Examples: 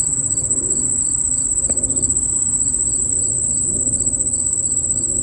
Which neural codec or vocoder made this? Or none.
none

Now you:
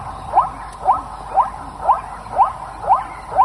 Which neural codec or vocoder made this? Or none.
none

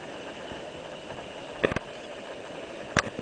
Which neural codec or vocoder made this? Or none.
none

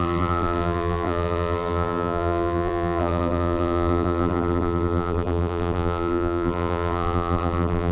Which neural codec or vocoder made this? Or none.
vocoder, BigVGAN v2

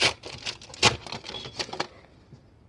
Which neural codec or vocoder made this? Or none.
none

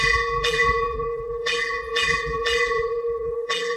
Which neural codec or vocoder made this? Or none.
vocoder, BigVGAN v2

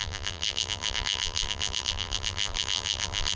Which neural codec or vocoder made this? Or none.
vocoder, BigVGAN v2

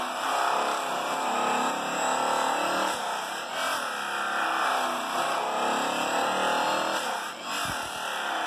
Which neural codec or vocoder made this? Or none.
none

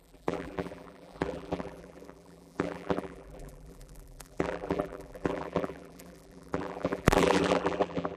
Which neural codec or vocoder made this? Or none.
vocoder, BigVGAN v2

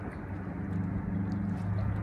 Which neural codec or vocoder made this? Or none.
none